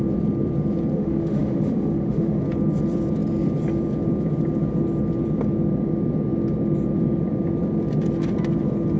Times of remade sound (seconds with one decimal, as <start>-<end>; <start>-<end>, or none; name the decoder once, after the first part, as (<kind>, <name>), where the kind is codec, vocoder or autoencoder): 0.9-2.4 (autoencoder, DAC-VAE)